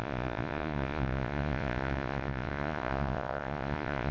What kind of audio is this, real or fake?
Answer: fake